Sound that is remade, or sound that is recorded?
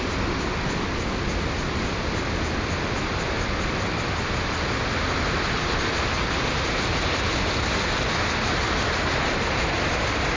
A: recorded